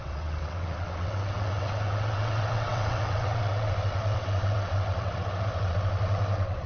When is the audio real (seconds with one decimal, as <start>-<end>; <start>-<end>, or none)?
none